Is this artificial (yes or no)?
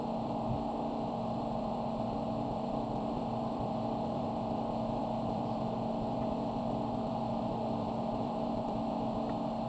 yes